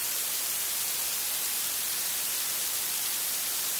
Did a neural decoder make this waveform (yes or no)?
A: yes